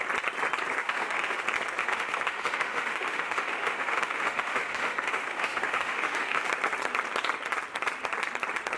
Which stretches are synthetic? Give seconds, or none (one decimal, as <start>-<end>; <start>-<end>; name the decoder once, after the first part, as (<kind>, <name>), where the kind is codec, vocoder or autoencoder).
0.8-1.4 (autoencoder, DAC-VAE); 1.8-6.5